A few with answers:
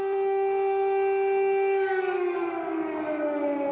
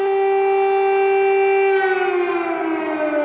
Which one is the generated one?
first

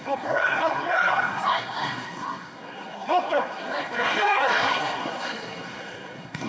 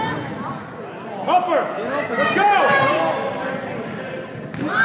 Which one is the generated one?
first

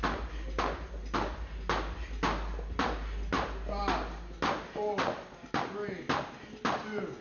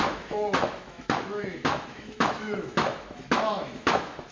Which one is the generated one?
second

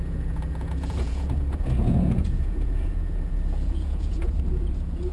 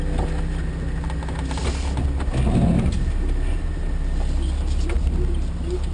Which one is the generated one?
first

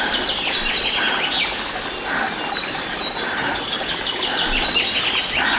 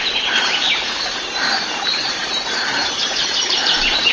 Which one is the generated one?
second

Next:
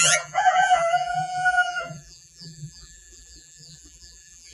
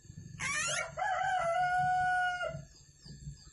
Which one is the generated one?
first